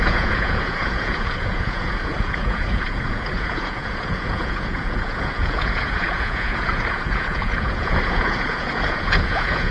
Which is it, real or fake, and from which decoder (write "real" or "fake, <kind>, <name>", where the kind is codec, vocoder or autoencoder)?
fake, vocoder, Vocos